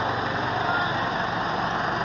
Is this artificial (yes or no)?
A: no